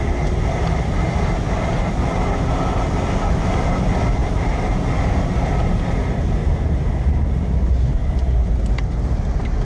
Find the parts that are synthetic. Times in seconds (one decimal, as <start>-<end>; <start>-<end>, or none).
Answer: 4.2-4.8; 6.4-7.7